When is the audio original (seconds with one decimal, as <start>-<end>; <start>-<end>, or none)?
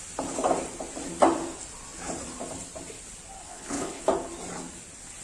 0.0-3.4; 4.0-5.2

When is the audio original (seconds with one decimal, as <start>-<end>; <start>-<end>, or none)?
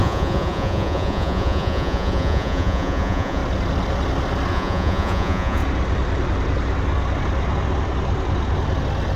3.4-4.5; 5.6-9.2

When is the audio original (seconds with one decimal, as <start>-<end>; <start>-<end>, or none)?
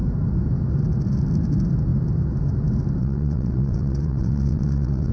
0.0-3.0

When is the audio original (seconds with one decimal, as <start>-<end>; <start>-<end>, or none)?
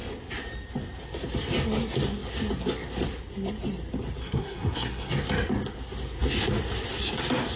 0.0-4.2; 5.1-7.6